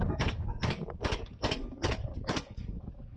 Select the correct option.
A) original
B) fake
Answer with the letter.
B